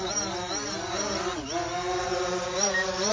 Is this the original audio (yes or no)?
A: yes